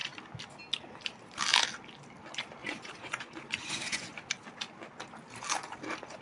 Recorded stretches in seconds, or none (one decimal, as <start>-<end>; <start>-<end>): 0.0-2.6; 4.3-6.2